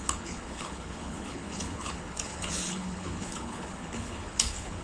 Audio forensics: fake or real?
fake